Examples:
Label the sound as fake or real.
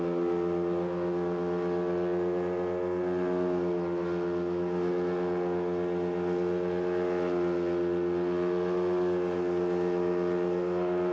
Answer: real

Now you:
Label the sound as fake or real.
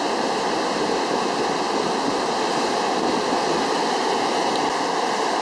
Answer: real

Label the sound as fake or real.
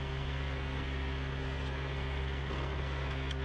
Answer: fake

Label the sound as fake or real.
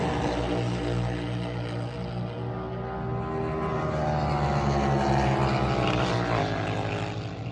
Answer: real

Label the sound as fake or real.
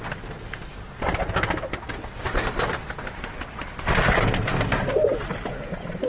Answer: real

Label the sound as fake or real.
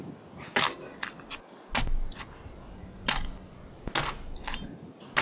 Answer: real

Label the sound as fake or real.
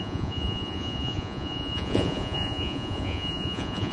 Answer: fake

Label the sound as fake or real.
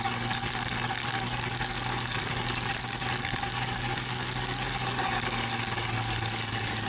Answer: fake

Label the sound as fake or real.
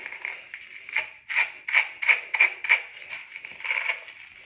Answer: real